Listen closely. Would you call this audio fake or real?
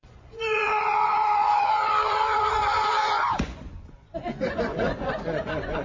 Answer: fake